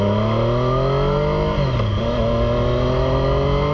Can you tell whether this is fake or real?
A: real